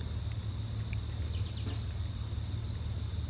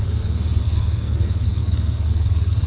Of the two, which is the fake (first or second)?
second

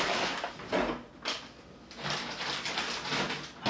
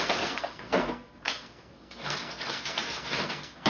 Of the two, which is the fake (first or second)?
second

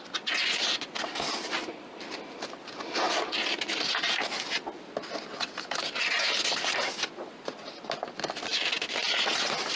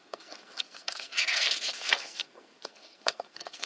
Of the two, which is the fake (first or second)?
second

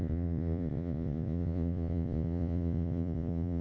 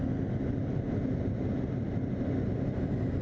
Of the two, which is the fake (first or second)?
first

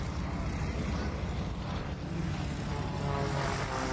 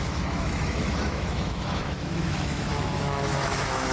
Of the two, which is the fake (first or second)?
second